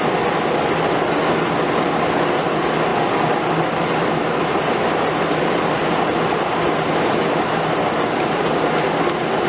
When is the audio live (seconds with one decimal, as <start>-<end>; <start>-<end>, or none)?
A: 0.0-9.5